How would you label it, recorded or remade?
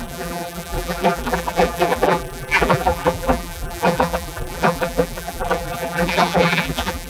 remade